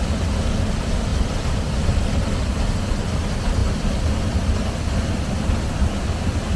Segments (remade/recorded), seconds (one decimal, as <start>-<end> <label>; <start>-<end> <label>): 0.0-6.6 recorded